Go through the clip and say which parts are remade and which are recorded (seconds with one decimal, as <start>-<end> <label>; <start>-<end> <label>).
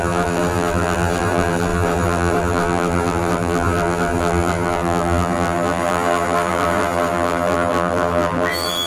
0.0-8.9 remade